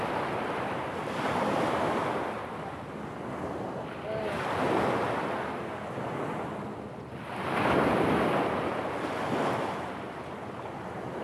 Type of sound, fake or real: real